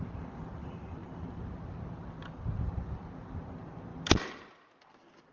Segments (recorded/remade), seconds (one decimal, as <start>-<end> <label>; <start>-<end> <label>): 0.0-5.3 recorded